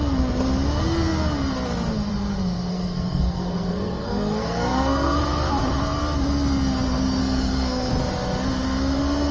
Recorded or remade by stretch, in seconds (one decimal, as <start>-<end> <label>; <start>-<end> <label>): 0.0-2.7 recorded; 2.7-5.2 remade; 5.2-7.2 recorded; 7.2-7.9 remade; 7.9-9.3 recorded